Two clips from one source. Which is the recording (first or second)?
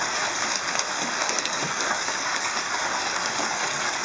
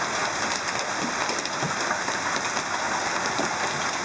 second